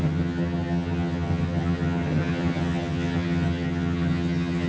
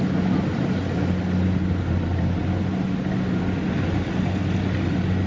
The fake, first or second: first